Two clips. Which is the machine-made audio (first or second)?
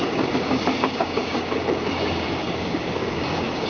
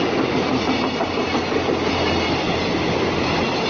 first